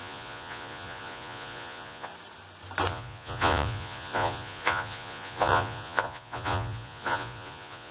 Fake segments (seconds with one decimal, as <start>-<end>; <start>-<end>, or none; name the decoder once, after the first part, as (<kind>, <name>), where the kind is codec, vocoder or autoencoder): 0.0-2.1 (vocoder, Vocos); 2.9-7.9